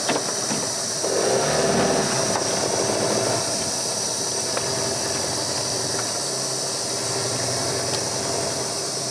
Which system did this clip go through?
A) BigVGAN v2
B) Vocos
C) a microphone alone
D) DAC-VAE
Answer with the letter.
C